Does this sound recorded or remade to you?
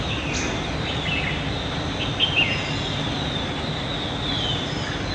recorded